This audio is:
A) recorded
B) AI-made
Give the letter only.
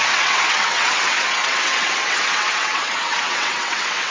B